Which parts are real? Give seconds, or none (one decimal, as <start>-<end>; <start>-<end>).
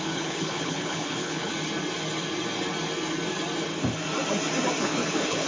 1.5-4.8